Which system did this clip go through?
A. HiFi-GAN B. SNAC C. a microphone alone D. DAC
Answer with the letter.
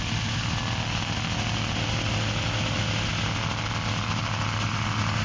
C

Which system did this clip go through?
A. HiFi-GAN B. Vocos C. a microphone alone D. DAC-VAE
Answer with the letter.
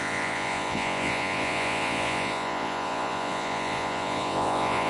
B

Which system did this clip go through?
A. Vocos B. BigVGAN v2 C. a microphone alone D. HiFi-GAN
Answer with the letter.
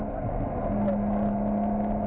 C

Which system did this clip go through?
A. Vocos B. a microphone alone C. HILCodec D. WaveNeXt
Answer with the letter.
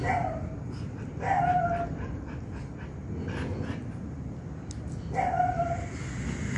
B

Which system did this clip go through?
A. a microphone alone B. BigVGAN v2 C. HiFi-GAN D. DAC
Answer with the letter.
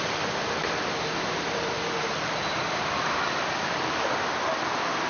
B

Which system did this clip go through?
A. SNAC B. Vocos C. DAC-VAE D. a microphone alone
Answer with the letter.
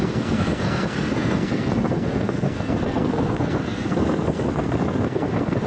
A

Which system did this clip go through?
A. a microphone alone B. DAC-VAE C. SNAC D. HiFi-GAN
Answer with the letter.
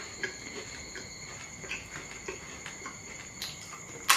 A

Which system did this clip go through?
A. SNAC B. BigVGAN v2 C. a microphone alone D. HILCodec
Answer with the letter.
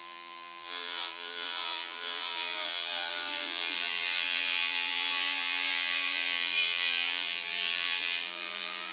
B